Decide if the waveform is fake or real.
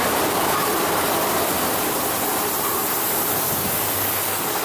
real